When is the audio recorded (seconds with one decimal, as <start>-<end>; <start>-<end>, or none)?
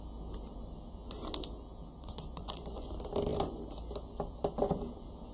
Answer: 0.0-1.9; 2.9-5.3